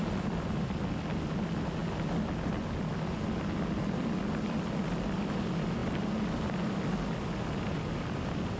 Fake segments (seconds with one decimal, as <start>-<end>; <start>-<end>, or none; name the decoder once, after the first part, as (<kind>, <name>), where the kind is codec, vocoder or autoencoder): none